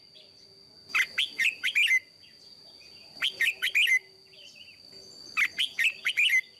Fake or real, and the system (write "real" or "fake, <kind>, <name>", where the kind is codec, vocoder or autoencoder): real